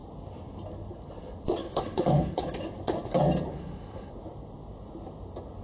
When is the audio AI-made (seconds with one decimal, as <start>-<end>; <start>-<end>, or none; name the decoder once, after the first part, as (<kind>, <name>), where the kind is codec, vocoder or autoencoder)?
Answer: 1.6-2.5 (codec, HILCodec); 3.5-4.1